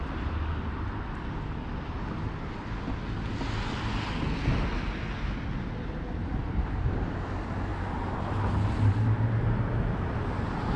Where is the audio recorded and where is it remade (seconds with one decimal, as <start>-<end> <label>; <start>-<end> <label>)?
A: 0.0-10.8 recorded